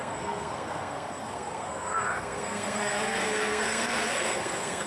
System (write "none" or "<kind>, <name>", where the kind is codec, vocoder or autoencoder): codec, SNAC